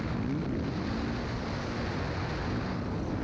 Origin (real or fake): real